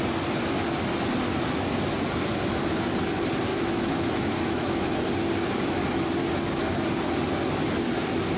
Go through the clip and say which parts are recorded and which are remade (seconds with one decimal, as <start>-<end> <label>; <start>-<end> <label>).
0.0-3.5 recorded; 3.5-4.9 remade; 4.9-8.4 recorded